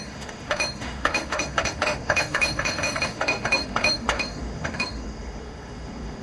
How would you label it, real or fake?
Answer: fake